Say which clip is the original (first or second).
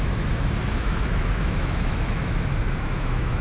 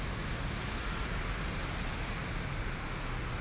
second